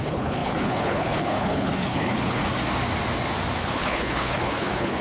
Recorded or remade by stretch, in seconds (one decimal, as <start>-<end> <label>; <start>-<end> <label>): 0.0-2.4 remade; 2.4-3.6 recorded; 3.6-5.0 remade